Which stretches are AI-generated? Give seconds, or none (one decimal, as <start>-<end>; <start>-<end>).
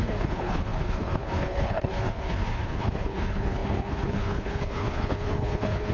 0.0-5.9